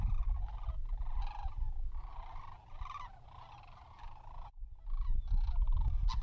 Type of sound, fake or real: real